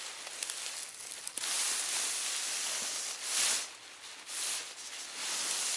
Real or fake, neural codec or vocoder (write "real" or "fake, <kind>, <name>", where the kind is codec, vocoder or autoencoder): real